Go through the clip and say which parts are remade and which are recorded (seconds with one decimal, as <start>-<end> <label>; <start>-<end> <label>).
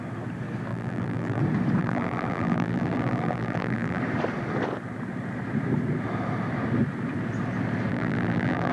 0.0-0.7 recorded; 0.7-1.4 remade; 1.4-1.8 recorded; 1.8-4.0 remade; 4.0-7.9 recorded; 7.9-8.7 remade